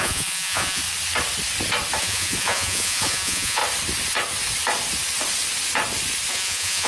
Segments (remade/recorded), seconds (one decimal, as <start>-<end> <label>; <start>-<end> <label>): 0.0-0.8 remade; 0.8-2.0 recorded; 2.0-3.6 remade; 3.6-6.3 recorded; 6.3-6.9 remade